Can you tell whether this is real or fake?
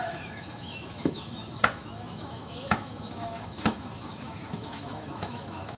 fake